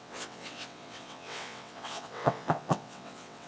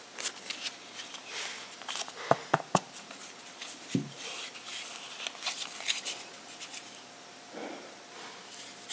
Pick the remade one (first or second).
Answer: first